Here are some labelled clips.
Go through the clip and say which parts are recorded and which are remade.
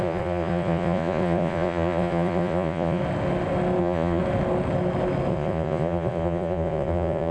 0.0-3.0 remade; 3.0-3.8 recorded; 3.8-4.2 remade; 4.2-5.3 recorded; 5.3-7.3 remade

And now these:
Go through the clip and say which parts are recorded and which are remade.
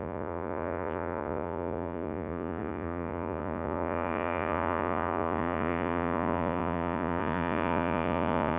0.0-8.6 remade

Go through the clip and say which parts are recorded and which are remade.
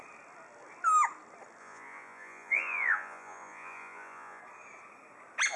0.0-1.6 recorded; 1.6-4.4 remade; 4.4-5.6 recorded